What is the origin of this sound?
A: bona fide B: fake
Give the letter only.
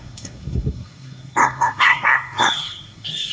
B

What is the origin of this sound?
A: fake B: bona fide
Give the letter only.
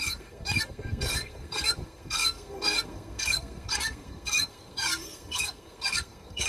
A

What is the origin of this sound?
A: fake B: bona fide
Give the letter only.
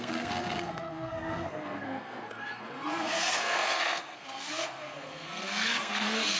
A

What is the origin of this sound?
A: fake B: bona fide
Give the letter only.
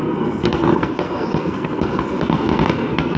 A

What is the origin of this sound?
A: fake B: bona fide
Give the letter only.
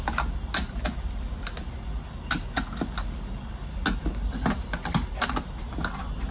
B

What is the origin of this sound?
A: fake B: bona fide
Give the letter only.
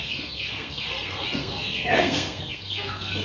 A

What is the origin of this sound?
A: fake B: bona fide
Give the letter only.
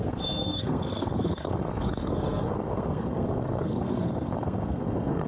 A